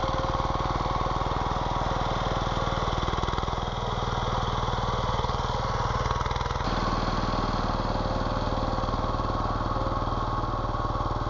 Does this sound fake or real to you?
real